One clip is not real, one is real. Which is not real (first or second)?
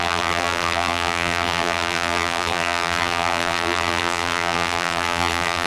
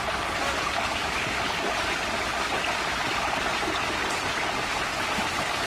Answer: first